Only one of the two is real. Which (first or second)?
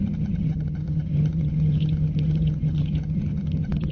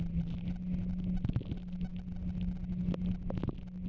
second